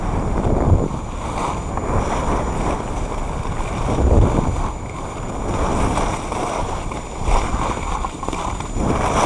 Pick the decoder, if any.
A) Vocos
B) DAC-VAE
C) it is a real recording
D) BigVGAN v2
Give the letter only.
C